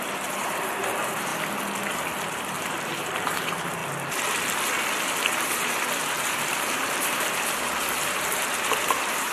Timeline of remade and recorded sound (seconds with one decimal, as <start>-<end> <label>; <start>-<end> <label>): 0.0-1.3 remade; 1.3-2.3 recorded; 2.3-3.8 remade; 3.8-5.3 recorded; 5.3-9.3 remade